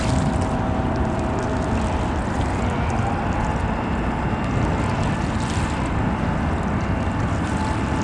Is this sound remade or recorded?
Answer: recorded